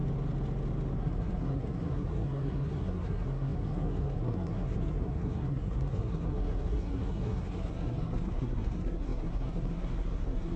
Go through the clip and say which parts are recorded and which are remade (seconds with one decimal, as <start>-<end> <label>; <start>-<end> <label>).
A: 0.0-1.0 recorded; 1.0-10.6 remade